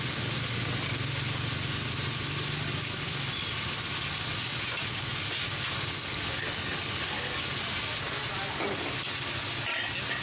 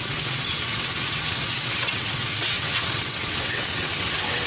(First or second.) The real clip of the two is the first